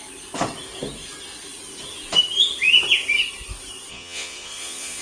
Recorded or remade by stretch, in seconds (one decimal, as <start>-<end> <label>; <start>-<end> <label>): 0.0-3.9 recorded; 3.9-5.0 remade